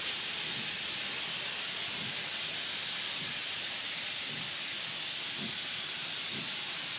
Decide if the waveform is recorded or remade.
recorded